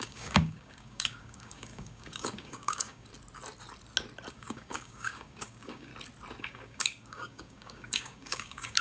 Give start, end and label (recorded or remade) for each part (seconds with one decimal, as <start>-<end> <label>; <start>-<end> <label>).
0.0-3.1 remade; 3.1-4.3 recorded; 4.3-5.9 remade; 5.9-6.4 recorded; 6.4-8.8 remade